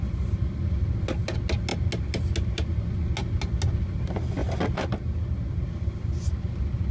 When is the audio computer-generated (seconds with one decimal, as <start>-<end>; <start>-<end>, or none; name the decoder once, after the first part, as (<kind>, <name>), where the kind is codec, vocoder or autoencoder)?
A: none